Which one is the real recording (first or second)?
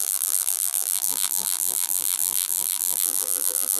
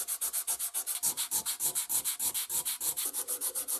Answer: second